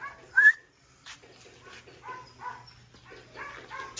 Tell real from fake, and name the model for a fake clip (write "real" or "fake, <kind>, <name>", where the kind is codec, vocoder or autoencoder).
real